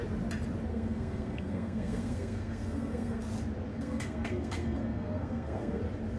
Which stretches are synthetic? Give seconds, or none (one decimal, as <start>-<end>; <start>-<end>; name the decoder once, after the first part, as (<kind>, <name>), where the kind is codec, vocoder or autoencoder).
0.7-3.2 (codec, SNAC); 3.7-5.8